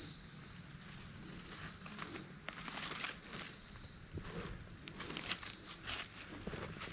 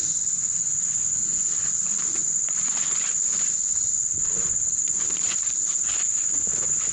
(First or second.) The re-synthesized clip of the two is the second